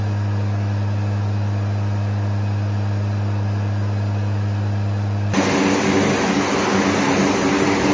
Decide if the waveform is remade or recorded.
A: recorded